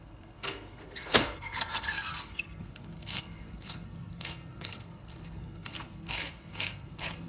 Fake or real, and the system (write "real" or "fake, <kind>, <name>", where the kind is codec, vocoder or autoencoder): fake, codec, SNAC